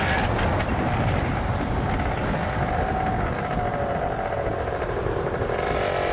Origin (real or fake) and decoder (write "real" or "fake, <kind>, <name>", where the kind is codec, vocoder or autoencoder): real